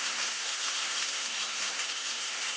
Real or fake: fake